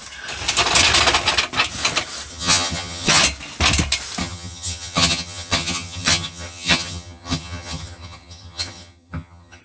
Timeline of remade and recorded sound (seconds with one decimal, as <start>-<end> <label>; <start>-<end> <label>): 0.0-2.3 recorded; 2.3-3.2 remade; 3.2-4.2 recorded; 4.2-9.6 remade